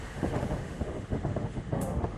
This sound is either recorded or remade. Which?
remade